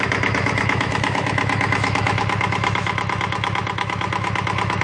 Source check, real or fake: fake